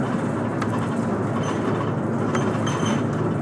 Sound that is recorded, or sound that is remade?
recorded